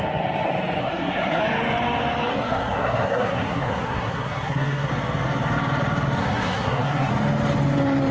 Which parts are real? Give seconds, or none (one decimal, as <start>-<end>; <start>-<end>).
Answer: 0.0-0.8; 1.4-2.3; 4.9-6.2; 7.1-8.1